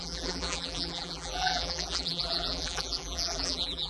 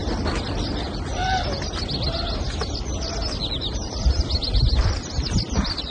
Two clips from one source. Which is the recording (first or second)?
second